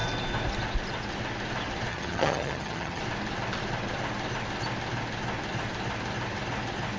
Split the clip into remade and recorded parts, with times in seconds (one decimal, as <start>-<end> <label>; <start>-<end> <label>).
0.0-1.9 recorded; 1.9-3.0 remade; 3.0-7.0 recorded